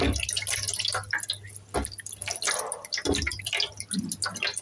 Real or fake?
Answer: real